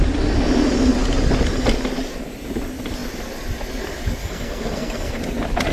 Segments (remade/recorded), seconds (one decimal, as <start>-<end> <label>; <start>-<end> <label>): 0.0-4.2 recorded; 4.2-5.2 remade; 5.2-5.7 recorded